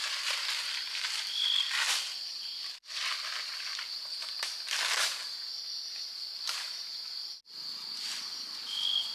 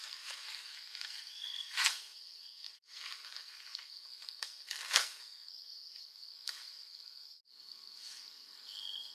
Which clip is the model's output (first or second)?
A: second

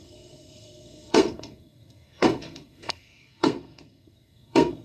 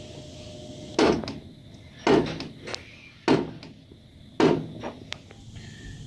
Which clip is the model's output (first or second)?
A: first